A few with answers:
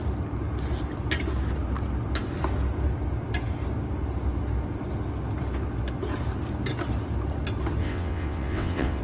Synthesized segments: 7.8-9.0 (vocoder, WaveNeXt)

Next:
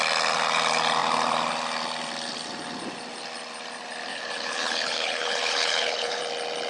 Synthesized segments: 4.1-6.2 (codec, HILCodec)

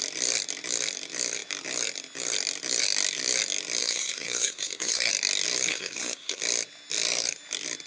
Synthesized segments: 3.8-5.1 (codec, SNAC); 5.7-6.4

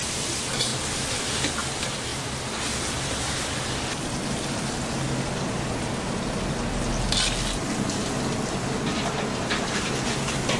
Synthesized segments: none

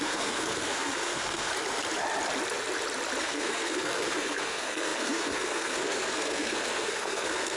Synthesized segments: 0.0-1.5 (codec, SNAC); 3.2-7.6

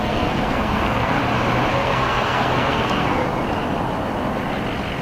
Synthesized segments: 0.0-1.2 (codec, SNAC); 1.7-3.2